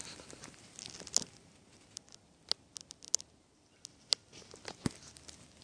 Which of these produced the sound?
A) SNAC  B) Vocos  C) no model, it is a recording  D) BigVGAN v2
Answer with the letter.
C